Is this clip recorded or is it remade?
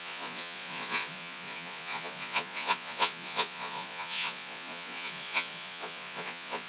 remade